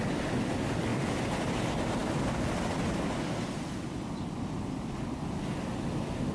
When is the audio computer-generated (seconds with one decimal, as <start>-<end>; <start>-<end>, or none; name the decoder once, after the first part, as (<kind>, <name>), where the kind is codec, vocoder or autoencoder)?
none